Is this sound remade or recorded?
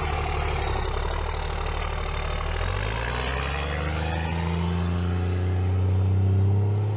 recorded